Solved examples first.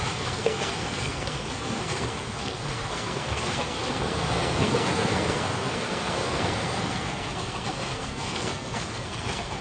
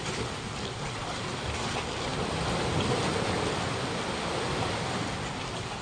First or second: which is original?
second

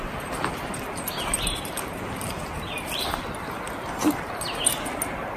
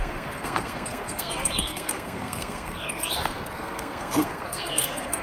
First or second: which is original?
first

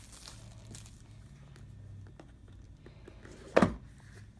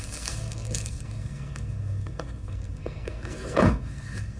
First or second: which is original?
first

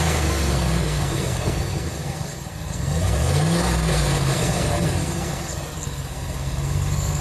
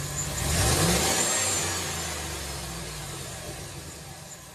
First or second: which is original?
second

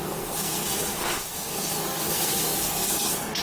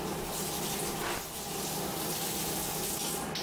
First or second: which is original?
second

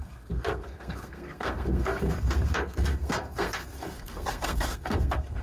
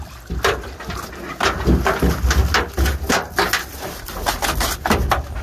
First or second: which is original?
second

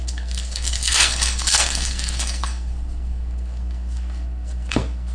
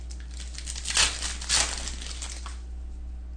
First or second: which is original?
second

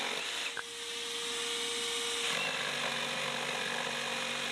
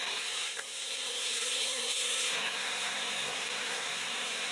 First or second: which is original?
first